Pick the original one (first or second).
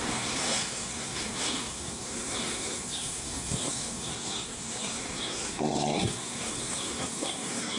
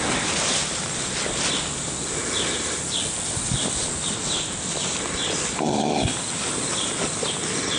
second